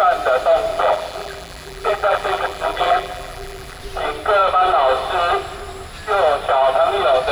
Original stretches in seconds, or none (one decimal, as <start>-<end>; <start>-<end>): 0.0-0.7; 3.8-7.3